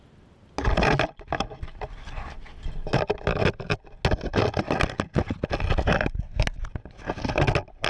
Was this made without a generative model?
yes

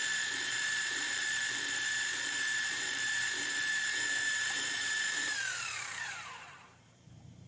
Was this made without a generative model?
no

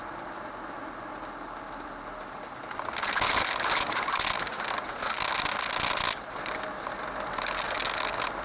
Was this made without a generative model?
yes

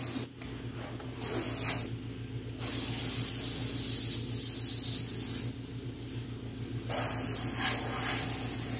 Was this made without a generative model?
yes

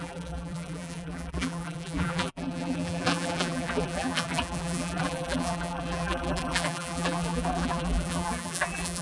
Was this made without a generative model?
no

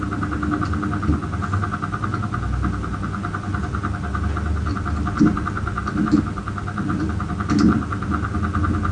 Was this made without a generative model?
yes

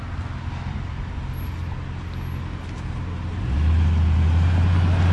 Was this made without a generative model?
yes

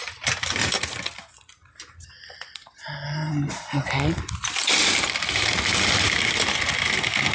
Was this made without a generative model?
yes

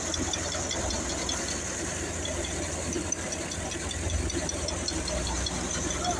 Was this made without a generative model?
yes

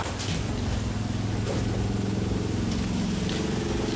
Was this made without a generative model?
yes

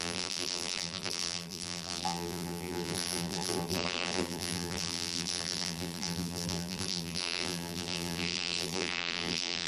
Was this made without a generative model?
no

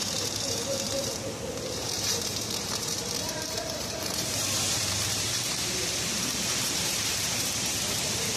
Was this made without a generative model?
no